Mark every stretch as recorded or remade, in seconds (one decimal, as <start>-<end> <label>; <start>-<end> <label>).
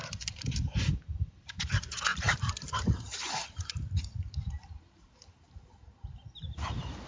0.0-7.1 remade